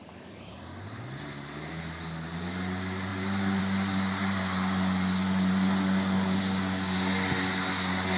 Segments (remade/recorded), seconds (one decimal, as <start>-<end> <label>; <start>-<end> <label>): 0.0-0.6 remade; 0.6-8.2 recorded